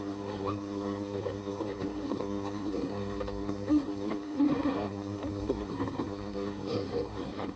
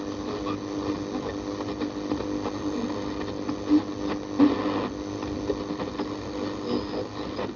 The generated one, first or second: first